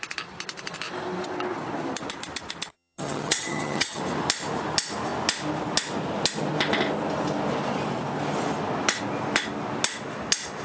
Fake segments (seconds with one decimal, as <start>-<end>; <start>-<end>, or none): 2.7-4.0